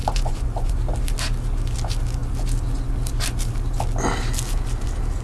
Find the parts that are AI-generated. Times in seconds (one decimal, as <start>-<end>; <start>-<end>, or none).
0.0-0.8